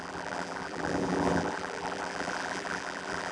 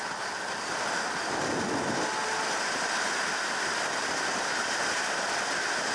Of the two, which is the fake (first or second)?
first